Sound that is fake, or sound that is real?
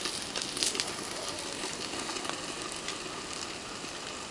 real